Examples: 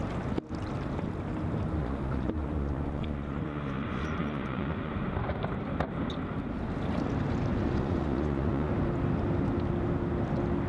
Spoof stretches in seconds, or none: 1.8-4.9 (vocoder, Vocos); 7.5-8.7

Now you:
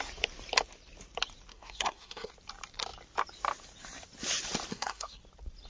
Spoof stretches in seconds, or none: 1.5-2.3 (codec, SNAC); 4.7-5.2